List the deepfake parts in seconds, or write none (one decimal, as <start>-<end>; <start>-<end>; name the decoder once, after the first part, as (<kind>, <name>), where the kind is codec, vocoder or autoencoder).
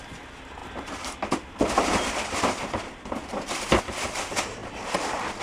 none